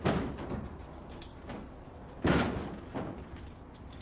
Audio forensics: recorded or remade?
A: recorded